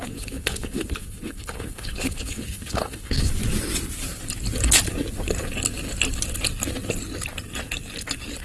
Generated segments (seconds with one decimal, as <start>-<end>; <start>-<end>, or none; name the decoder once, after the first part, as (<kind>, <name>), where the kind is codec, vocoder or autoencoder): 0.0-3.3 (codec, HILCodec)